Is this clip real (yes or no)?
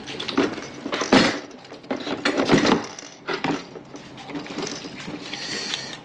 yes